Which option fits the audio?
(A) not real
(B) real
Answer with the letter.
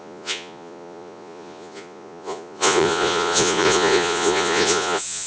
A